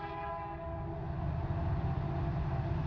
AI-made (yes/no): no